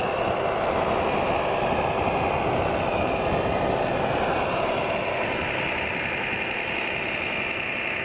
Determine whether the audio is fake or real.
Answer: real